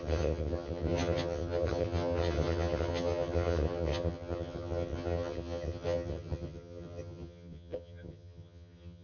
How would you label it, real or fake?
fake